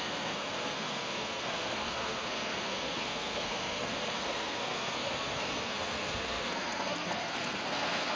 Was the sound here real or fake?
fake